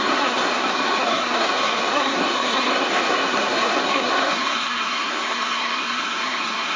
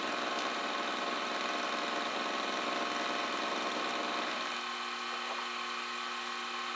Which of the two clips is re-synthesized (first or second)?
first